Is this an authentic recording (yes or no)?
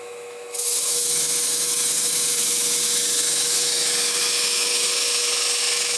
no